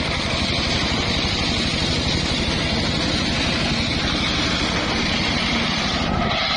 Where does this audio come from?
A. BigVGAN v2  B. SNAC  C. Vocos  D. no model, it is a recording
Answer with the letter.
D